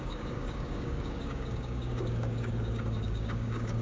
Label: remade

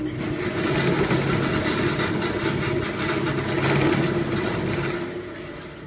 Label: recorded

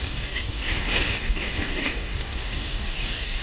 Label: remade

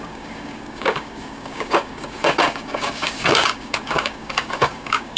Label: remade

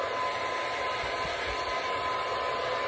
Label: recorded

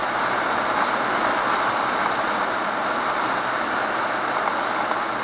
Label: recorded